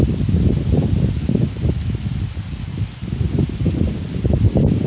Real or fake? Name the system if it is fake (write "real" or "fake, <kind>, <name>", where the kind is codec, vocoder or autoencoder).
real